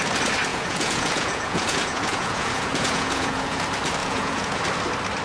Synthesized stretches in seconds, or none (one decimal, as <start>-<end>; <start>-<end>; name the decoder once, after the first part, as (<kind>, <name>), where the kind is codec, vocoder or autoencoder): 0.5-3.6 (vocoder, Vocos); 4.0-4.6

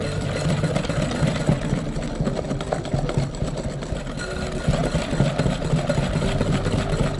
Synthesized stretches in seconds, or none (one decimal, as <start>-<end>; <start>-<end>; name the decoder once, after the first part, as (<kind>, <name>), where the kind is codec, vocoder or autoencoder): none